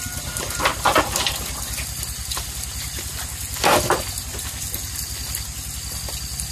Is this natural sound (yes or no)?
yes